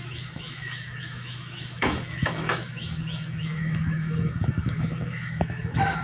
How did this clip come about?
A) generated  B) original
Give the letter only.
A